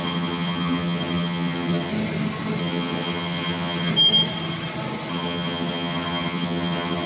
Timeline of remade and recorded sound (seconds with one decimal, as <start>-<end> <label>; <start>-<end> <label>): 0.0-1.9 remade; 1.9-2.6 recorded; 2.6-3.9 remade; 3.9-5.1 recorded; 5.1-7.1 remade